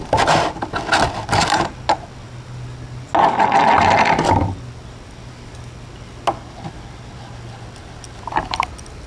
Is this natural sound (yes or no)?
yes